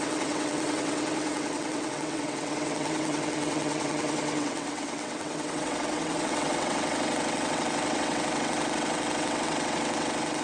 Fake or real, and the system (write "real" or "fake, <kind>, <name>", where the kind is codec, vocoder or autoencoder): fake, vocoder, WaveNeXt